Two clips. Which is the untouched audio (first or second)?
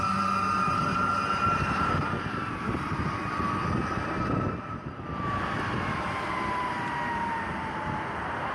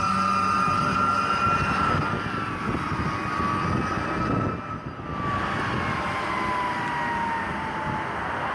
second